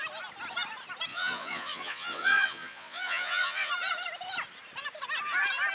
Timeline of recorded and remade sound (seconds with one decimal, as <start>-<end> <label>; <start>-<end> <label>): 0.0-1.1 recorded; 1.1-3.7 remade; 3.7-5.7 recorded